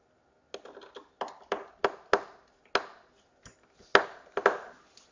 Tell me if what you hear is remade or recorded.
recorded